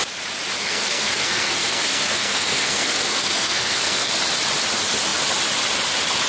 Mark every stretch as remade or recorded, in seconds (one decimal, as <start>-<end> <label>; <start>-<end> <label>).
0.0-0.6 recorded; 0.6-4.1 remade; 4.1-6.3 recorded